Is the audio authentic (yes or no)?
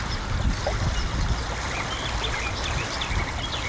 yes